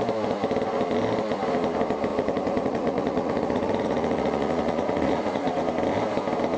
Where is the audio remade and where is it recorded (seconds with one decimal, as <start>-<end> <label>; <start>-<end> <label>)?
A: 0.0-2.1 recorded; 2.1-5.6 remade; 5.6-6.6 recorded